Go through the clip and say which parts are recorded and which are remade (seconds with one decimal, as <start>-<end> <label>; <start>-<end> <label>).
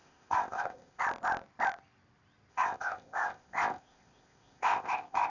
0.0-1.0 remade; 1.0-2.5 recorded; 2.5-5.3 remade